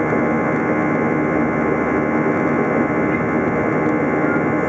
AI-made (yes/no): no